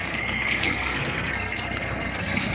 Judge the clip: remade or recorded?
remade